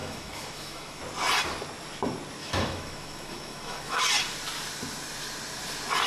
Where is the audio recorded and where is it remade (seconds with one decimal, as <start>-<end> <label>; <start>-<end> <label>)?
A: 0.0-1.0 remade; 1.0-2.4 recorded; 2.4-4.0 remade; 4.0-6.1 recorded